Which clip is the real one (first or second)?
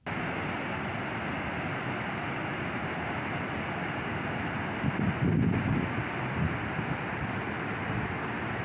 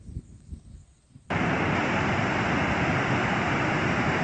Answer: first